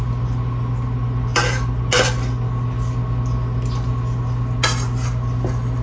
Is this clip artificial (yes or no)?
no